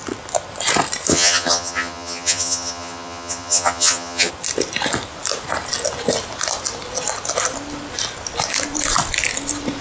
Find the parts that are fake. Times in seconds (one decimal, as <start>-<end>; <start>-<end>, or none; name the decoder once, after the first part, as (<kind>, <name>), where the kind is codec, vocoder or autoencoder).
1.1-4.3 (vocoder, HiFi-GAN)

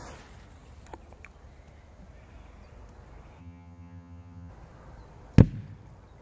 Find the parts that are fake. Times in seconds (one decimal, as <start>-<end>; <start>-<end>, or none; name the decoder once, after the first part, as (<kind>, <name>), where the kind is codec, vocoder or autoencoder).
3.4-4.5 (vocoder, HiFi-GAN)

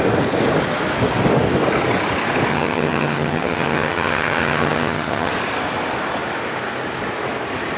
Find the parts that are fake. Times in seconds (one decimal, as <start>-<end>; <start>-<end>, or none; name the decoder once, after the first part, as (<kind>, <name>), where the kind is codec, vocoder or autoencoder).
2.5-5.3 (vocoder, HiFi-GAN)